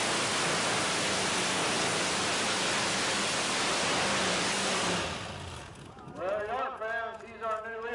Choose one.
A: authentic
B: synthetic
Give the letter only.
A